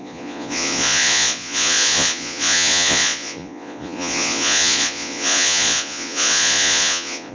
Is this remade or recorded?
remade